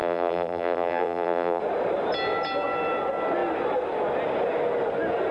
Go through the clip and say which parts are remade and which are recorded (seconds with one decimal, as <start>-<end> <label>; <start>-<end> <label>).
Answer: 0.0-1.6 remade; 1.6-5.3 recorded